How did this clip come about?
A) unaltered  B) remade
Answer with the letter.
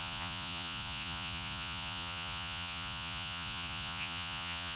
B